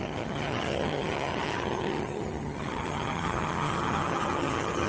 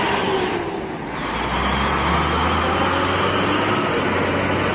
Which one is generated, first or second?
first